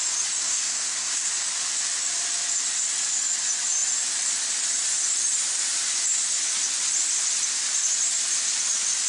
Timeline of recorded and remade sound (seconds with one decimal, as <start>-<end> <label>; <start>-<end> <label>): 0.0-0.5 recorded; 0.5-1.3 remade; 1.3-9.1 recorded